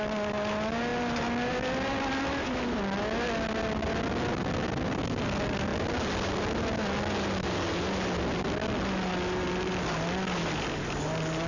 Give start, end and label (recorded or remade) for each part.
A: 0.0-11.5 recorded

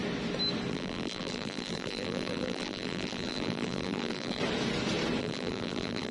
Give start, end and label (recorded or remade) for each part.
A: 0.0-0.7 recorded; 0.7-4.4 remade; 4.4-5.2 recorded; 5.2-6.1 remade

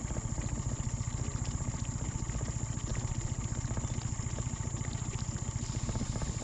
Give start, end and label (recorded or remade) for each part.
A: 0.0-6.4 recorded

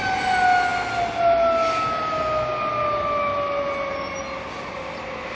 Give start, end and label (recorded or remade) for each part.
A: 0.0-5.3 recorded

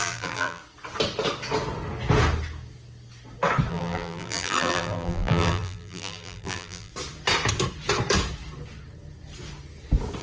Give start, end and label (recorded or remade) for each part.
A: 0.0-0.6 remade; 0.6-3.7 recorded; 3.7-6.9 remade; 6.9-10.2 recorded